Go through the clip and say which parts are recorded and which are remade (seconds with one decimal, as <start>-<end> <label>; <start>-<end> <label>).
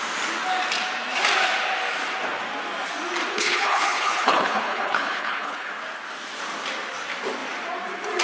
0.0-3.3 recorded; 3.3-5.7 remade; 5.7-8.2 recorded